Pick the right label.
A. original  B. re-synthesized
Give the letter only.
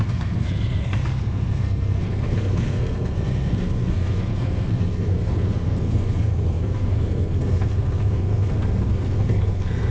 B